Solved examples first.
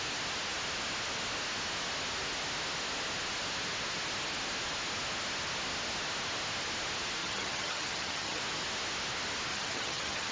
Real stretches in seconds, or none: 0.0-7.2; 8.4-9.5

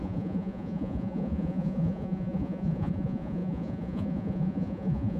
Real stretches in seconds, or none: none

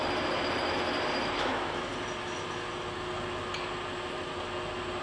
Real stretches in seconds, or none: 0.0-1.4; 1.9-5.0